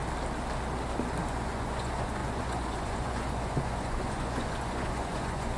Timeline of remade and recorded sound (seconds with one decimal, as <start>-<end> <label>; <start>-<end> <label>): 0.0-1.3 recorded; 1.3-5.6 remade